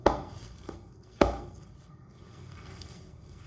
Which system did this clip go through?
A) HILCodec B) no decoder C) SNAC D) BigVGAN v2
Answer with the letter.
C